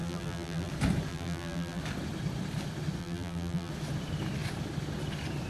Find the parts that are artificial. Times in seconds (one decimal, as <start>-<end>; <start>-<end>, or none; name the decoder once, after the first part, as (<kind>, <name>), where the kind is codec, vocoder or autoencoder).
0.0-0.7 (vocoder, BigVGAN v2); 1.1-1.8; 3.0-3.7